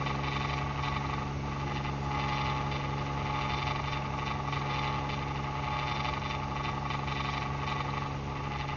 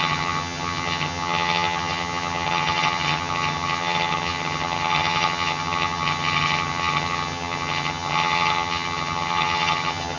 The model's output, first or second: second